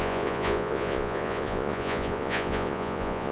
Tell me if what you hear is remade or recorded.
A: remade